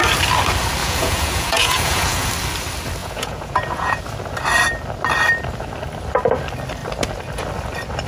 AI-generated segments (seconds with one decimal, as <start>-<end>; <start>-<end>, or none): 0.8-2.3; 3.0-4.0